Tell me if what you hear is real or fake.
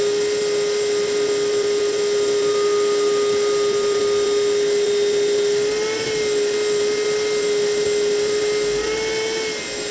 real